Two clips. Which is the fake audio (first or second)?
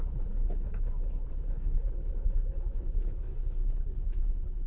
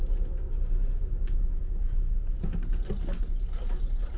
first